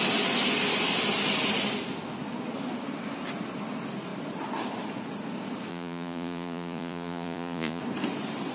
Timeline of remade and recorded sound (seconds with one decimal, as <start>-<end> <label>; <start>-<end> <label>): 0.0-5.7 recorded; 5.7-7.8 remade; 7.8-8.5 recorded